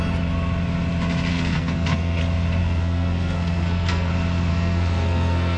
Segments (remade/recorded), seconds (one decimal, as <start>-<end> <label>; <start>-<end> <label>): 0.0-1.3 recorded; 1.3-2.2 remade; 2.2-2.6 recorded; 2.6-4.1 remade; 4.1-4.5 recorded; 4.5-5.6 remade